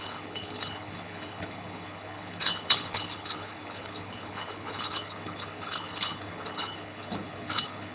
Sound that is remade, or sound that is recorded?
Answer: remade